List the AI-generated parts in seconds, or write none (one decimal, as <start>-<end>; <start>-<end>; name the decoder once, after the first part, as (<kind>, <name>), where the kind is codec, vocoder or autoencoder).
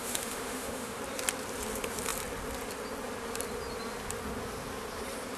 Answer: 0.0-1.0 (autoencoder, DAC-VAE)